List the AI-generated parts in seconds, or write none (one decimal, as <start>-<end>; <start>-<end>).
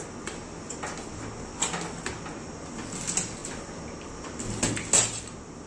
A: none